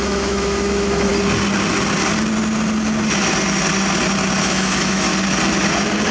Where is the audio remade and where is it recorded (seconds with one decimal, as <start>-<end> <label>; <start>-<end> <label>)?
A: 0.0-1.1 remade; 1.1-4.4 recorded; 4.4-5.1 remade; 5.1-6.1 recorded